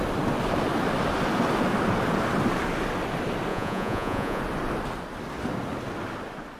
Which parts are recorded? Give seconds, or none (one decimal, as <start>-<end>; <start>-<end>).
0.0-3.5; 4.4-6.6